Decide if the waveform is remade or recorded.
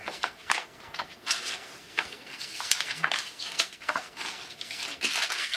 remade